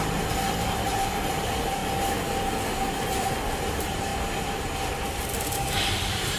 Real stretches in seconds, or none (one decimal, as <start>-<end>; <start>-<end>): 1.8-3.5; 4.1-6.0

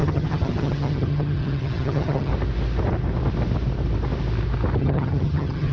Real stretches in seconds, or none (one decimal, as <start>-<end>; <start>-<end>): 2.3-4.8

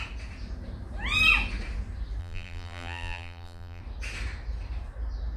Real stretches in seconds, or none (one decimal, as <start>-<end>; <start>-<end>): 0.0-2.2; 3.8-5.4

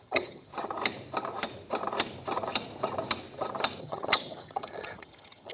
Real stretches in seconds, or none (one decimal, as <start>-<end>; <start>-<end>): 0.5-3.8

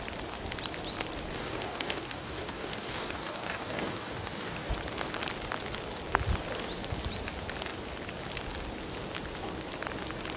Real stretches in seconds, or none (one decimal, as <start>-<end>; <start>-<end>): 0.0-1.3; 4.7-10.4

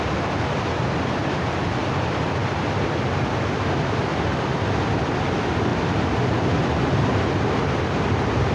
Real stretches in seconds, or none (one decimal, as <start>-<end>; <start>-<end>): 0.0-2.4; 3.1-8.5